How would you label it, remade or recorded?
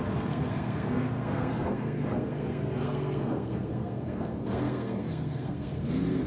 remade